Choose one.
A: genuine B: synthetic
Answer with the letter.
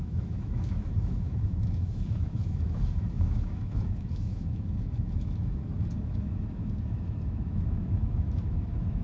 B